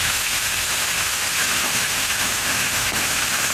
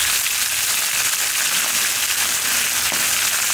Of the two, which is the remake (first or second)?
first